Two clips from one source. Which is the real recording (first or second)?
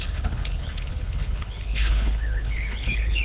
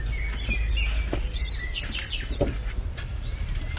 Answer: second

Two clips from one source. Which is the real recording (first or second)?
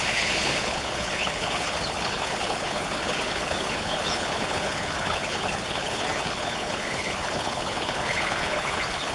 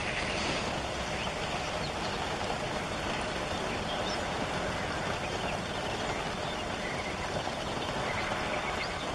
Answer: second